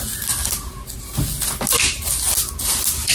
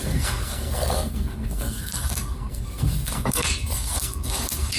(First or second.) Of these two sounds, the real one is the first